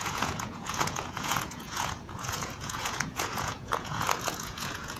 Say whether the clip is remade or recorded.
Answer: remade